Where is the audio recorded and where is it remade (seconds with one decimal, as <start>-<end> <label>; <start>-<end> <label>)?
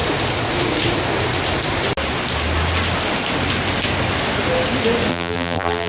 0.0-5.1 recorded; 5.1-5.9 remade